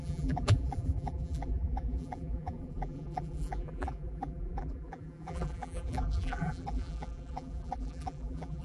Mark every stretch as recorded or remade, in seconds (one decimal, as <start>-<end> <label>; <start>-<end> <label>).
0.0-8.6 remade